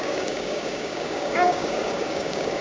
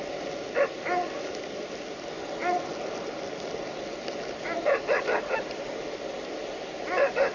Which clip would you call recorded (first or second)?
second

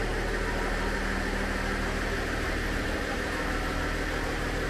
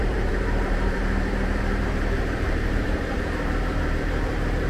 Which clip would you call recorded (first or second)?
first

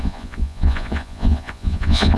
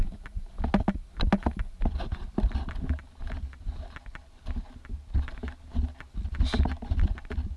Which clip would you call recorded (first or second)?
second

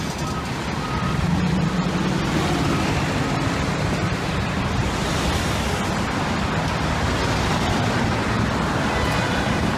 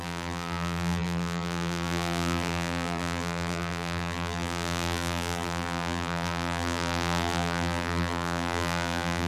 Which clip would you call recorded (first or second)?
first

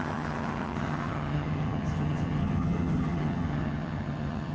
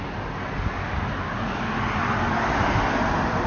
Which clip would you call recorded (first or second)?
second